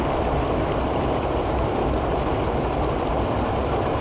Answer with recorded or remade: recorded